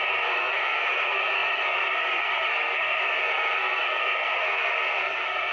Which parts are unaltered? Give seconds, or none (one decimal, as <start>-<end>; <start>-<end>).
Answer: none